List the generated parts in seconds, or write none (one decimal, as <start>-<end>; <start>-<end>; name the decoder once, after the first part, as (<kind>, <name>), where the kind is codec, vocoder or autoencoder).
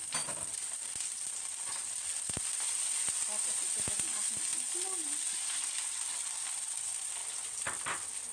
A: 0.0-4.5 (vocoder, BigVGAN v2); 5.2-8.3